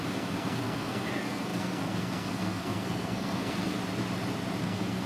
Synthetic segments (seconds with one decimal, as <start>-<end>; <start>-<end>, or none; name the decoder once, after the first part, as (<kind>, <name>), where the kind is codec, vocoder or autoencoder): 0.0-3.8 (codec, SNAC); 4.6-5.1

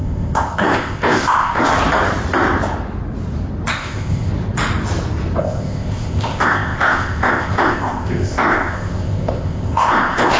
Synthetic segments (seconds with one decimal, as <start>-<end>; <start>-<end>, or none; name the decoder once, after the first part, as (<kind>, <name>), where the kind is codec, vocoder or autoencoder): 0.0-1.7 (codec, ZipCodec); 3.7-4.3; 5.4-10.4

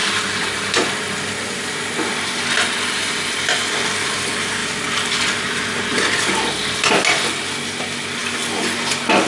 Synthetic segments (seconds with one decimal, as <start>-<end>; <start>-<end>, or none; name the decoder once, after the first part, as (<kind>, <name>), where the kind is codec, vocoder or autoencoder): 0.0-2.1 (vocoder, BigVGAN v2); 4.6-6.3

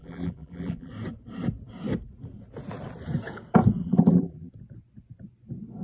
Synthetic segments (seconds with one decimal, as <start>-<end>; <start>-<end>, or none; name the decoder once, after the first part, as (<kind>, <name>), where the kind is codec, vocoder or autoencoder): 0.0-0.9 (vocoder, BigVGAN v2); 3.8-4.5

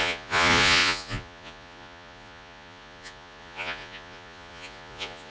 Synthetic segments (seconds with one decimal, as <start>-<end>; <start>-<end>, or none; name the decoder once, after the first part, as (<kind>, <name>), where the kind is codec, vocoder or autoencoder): 0.0-5.3 (vocoder, Vocos)

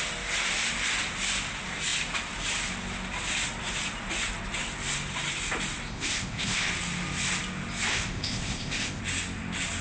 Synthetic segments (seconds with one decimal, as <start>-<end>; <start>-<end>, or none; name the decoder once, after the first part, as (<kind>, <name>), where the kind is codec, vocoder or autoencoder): 5.9-6.7 (codec, ZipCodec); 7.9-9.0

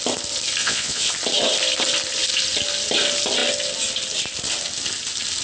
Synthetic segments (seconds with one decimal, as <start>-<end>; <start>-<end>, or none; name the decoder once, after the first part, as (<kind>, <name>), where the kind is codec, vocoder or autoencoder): 0.6-1.1 (vocoder, Vocos)

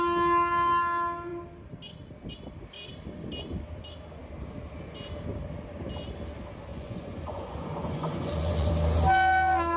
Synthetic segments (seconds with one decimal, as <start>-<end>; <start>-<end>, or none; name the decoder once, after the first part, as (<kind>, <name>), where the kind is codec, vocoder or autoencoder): 6.7-8.7 (vocoder, Vocos)